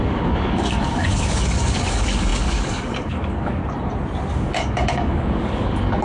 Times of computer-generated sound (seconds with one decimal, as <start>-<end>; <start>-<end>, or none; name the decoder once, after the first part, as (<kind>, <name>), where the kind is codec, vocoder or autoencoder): 0.0-3.6 (codec, DAC); 4.3-6.0